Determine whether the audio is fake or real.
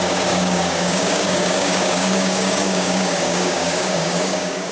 fake